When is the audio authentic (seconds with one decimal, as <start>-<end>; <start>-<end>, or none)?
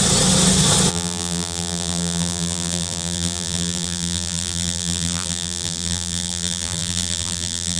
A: 0.0-0.9